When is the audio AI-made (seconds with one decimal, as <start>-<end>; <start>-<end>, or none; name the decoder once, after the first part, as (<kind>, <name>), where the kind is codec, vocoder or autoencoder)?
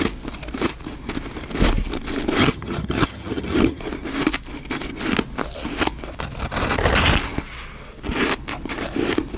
2.4-3.8 (vocoder, HiFi-GAN)